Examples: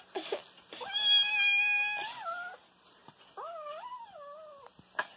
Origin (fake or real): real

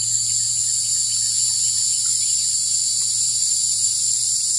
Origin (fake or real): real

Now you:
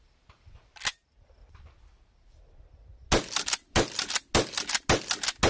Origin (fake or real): real